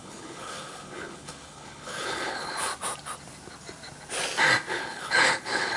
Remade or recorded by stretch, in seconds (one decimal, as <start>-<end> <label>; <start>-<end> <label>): 0.0-2.7 remade; 2.7-4.7 recorded; 4.7-5.8 remade